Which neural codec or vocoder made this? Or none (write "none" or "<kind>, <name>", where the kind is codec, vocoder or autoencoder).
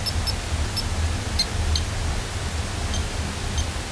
none